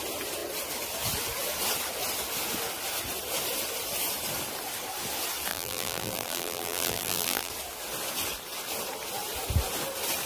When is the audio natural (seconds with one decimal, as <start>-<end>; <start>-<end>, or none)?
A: 0.0-5.5; 7.5-10.3